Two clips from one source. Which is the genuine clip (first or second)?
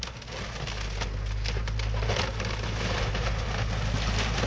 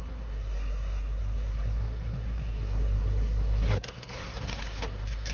first